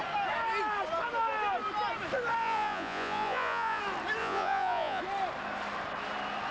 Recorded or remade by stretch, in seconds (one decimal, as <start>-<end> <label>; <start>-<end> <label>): 0.0-2.4 recorded; 2.4-3.8 remade; 3.8-4.2 recorded; 4.2-5.0 remade; 5.0-6.5 recorded